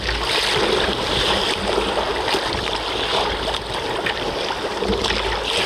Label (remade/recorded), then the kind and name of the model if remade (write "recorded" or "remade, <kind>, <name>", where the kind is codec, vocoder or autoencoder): recorded